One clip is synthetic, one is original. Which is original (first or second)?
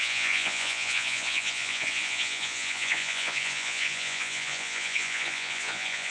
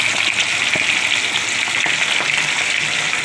second